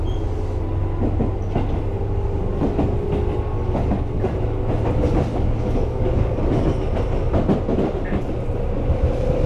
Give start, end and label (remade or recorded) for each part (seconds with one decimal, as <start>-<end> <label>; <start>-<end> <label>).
0.0-5.3 recorded; 5.3-6.4 remade; 6.4-9.5 recorded